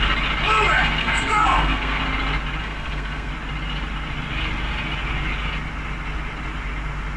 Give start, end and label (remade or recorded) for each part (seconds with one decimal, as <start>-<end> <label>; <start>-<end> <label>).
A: 0.0-1.0 recorded; 1.0-2.0 remade; 2.0-2.6 recorded; 2.6-3.3 remade; 3.3-7.2 recorded